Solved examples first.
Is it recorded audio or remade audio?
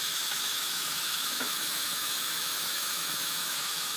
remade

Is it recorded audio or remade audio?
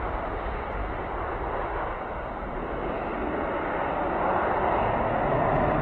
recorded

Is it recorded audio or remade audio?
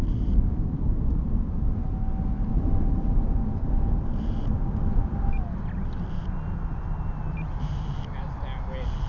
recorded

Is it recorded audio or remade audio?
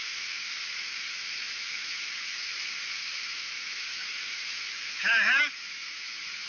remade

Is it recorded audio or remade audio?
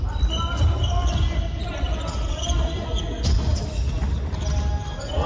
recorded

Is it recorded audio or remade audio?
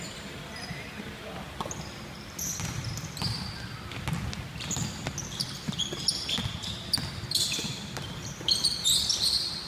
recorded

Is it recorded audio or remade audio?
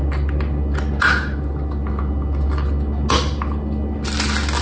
recorded